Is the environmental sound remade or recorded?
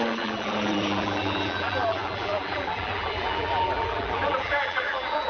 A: remade